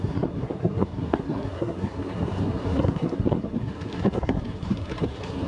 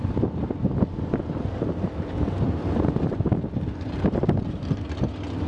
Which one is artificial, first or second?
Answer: first